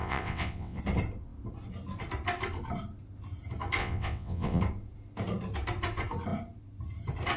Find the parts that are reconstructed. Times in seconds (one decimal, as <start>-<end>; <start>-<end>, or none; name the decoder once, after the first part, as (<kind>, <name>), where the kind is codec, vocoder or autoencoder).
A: 0.0-0.8 (vocoder, WaveNeXt); 3.8-4.6

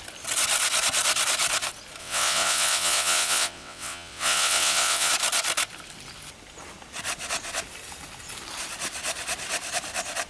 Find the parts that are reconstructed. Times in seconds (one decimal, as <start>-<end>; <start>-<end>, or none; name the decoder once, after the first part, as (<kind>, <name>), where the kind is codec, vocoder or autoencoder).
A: 2.0-5.1 (vocoder, WaveNeXt)

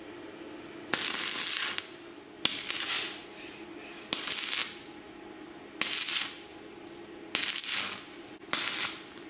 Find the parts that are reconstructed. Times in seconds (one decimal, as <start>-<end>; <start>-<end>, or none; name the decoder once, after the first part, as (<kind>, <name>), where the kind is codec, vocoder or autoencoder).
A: none

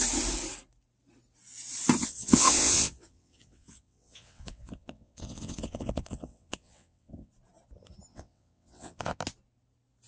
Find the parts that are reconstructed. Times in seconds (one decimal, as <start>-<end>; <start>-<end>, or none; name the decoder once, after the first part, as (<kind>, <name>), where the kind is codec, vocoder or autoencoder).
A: 2.0-7.3 (vocoder, WaveNeXt); 8.1-9.2